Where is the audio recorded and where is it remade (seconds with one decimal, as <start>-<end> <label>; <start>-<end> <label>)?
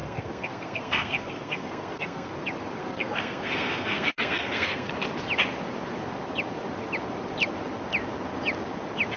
0.0-2.3 remade; 2.3-2.8 recorded; 2.8-4.9 remade; 4.9-9.2 recorded